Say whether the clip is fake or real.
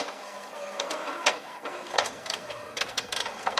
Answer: fake